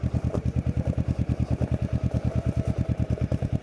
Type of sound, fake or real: fake